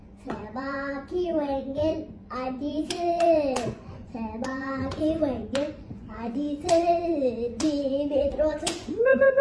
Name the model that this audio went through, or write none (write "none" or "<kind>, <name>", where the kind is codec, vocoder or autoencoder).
vocoder, Vocos